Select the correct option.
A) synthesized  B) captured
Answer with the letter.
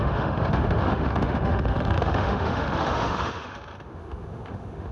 A